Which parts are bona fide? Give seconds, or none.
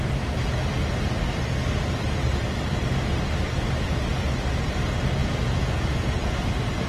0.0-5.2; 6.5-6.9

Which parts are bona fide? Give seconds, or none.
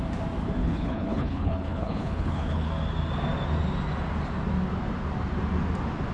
0.0-0.6; 2.7-6.1